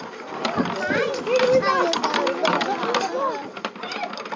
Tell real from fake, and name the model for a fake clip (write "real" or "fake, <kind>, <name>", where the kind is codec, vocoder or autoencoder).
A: real